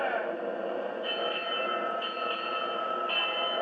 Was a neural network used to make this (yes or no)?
no